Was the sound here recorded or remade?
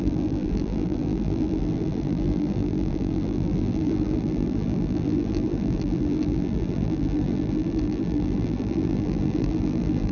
remade